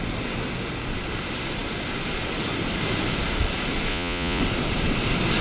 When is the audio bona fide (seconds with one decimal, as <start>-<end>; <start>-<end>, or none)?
0.0-3.9; 4.4-5.4